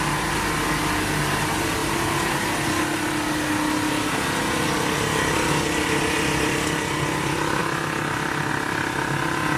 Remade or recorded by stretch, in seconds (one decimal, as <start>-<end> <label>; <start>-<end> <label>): 0.0-9.6 recorded